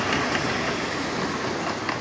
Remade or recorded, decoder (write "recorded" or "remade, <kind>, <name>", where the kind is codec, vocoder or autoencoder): recorded